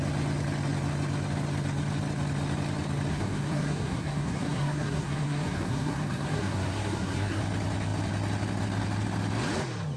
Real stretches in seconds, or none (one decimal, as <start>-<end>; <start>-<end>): 0.0-3.1; 7.4-10.0